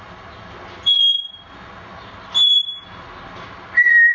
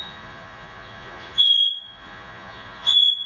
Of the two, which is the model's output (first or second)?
second